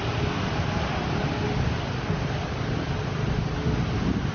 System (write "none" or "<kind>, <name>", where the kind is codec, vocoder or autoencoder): none